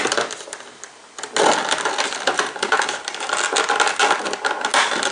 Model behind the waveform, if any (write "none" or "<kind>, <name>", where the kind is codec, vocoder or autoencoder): none